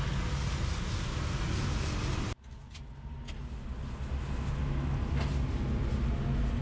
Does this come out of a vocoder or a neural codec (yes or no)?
no